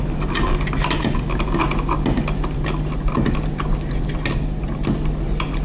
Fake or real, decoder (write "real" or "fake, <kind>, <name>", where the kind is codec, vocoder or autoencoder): real